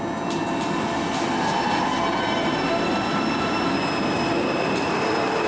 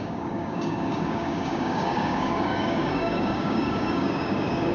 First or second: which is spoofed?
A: second